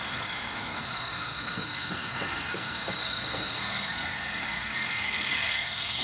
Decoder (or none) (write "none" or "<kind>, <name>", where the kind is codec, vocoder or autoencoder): codec, SNAC